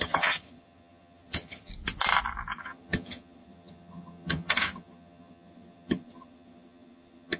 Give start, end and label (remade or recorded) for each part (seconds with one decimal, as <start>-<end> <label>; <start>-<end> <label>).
0.0-1.7 remade; 1.7-2.6 recorded; 2.6-7.4 remade